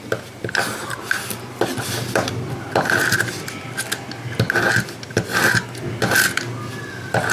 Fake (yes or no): no